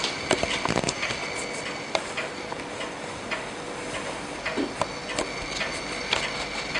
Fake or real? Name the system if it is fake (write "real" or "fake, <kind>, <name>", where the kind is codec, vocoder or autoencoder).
real